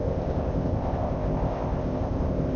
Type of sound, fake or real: fake